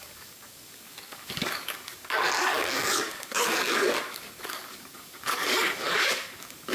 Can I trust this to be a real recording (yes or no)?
no